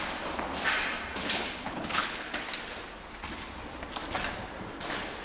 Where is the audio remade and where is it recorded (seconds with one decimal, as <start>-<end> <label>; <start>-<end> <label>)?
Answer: 0.0-1.2 recorded; 1.2-2.3 remade; 2.3-5.2 recorded